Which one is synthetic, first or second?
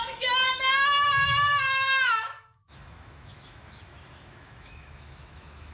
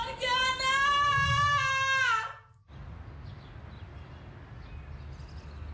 first